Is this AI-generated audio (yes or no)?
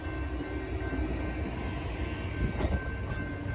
no